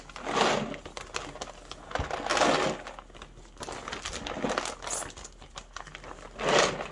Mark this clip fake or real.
real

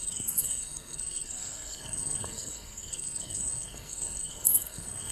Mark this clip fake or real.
fake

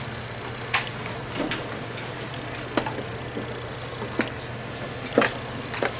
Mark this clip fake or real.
real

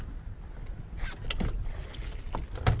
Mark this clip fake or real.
real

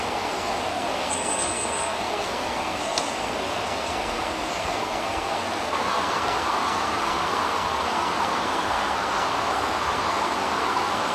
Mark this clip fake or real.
fake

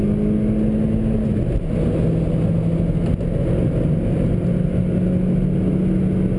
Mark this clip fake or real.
real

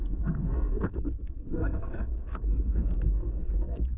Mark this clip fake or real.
fake